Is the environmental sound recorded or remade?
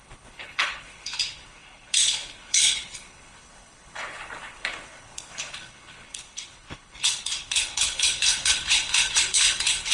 remade